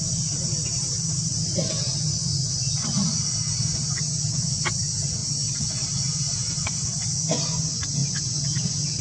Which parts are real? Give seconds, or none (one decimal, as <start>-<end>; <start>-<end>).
0.0-1.9; 2.7-9.0